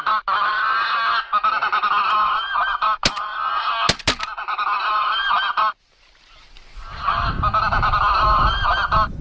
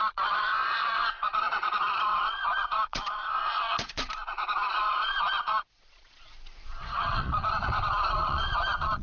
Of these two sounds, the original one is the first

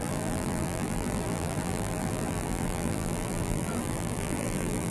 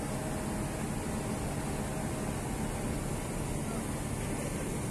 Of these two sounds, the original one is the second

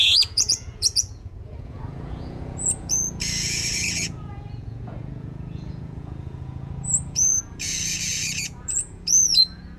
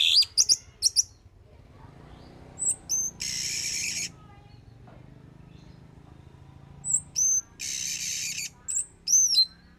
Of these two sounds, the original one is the second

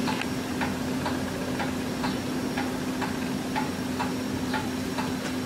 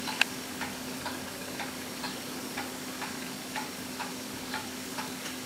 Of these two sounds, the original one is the first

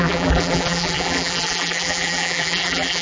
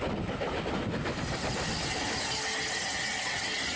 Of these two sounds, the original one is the second